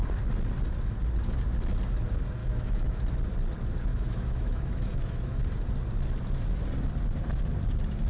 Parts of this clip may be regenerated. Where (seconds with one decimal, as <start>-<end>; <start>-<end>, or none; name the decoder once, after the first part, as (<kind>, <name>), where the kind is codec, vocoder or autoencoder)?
2.4-3.0 (autoencoder, DAC-VAE); 3.9-5.4